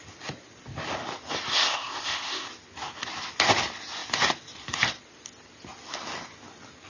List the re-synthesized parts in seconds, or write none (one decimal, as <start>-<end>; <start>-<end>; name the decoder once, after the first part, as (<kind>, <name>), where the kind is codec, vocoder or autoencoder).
1.5-2.5 (codec, ZipCodec)